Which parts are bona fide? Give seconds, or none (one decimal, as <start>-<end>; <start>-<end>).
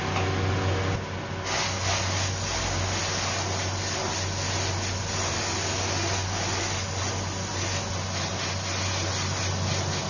0.0-10.1